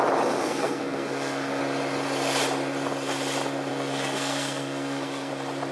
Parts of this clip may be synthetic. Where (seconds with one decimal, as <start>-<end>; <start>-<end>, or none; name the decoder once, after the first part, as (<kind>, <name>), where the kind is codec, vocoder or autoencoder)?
0.4-1.6 (codec, SNAC); 3.7-5.3